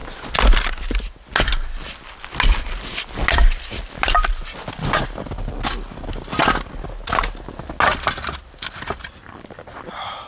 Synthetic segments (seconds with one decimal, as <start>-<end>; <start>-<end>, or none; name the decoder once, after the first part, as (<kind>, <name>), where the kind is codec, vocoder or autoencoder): 5.0-6.4 (vocoder, BigVGAN v2); 9.3-10.3